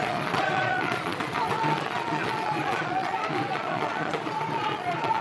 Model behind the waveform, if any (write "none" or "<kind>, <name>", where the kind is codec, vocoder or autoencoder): vocoder, Vocos